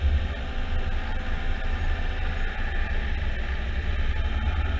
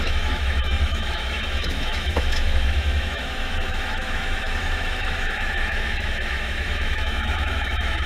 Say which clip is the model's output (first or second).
second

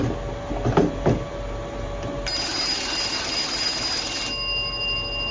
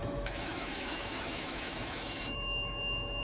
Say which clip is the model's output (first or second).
second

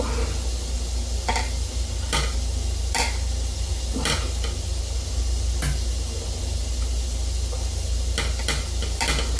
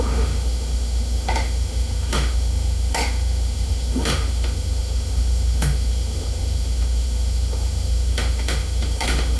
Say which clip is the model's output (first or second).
second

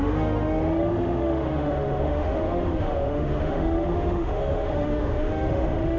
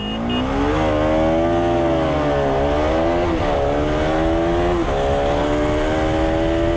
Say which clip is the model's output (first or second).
first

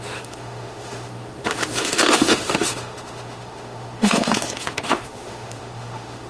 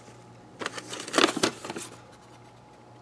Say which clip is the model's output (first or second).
first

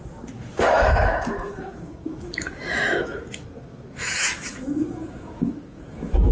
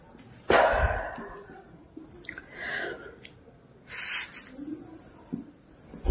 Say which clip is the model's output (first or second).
first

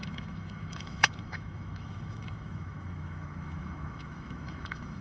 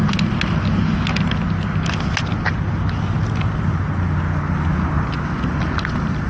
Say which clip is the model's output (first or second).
first